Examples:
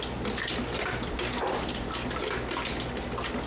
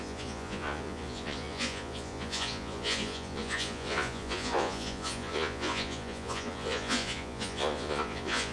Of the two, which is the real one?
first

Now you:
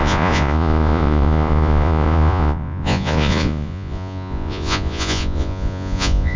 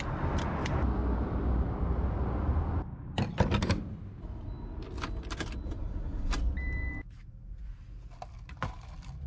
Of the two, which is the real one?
second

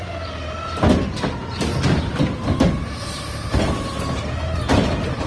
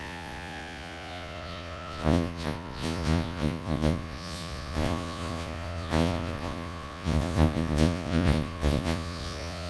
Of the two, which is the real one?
first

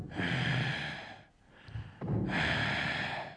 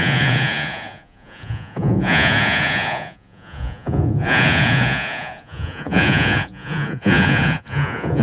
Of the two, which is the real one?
first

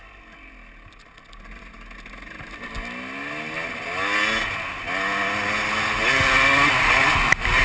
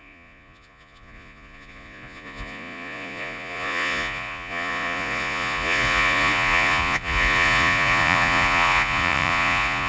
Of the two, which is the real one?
first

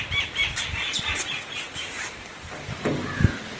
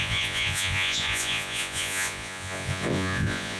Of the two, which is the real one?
first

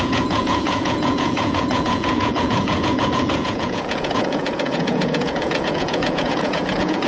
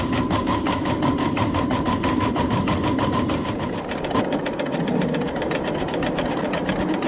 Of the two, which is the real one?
second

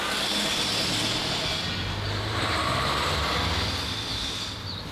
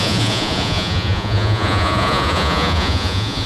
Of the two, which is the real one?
first